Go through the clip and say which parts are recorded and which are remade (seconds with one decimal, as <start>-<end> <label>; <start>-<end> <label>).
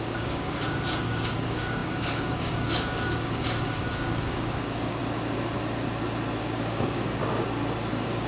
0.0-5.0 remade; 5.0-6.4 recorded; 6.4-7.2 remade; 7.2-7.9 recorded; 7.9-8.3 remade